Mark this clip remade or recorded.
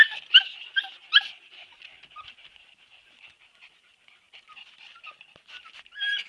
remade